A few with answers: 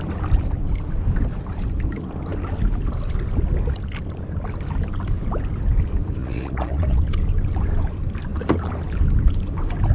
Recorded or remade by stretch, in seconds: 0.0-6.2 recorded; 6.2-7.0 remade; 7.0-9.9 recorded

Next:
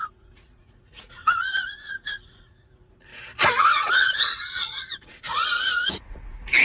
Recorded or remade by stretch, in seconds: 0.0-3.1 remade; 3.1-3.6 recorded; 3.6-6.6 remade